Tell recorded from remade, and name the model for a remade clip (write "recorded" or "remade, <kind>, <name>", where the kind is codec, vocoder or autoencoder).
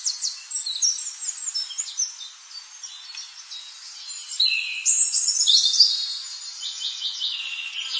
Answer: recorded